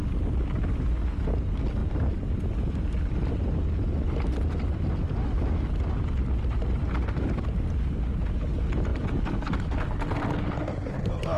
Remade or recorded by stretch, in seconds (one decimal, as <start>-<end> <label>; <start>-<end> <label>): 0.0-11.4 recorded